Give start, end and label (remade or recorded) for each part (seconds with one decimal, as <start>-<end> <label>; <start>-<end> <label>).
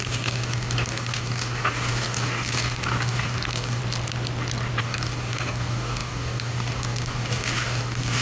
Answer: 0.0-3.8 remade; 3.8-4.8 recorded; 4.8-8.2 remade